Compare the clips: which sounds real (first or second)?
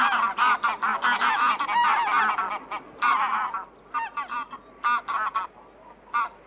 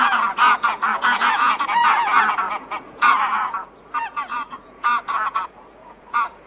first